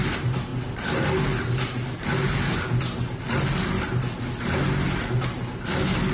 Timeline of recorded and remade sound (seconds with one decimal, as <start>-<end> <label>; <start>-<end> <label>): 0.0-6.1 recorded